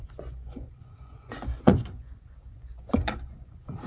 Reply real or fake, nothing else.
fake